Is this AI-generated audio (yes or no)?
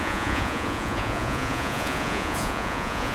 yes